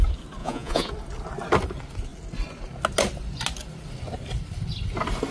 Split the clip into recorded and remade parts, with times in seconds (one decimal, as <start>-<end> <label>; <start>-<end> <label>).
0.0-0.4 recorded; 0.4-0.9 remade; 0.9-5.3 recorded